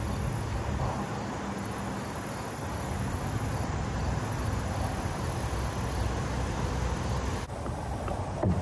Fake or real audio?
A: real